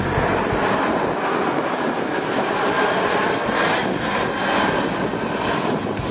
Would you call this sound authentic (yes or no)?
yes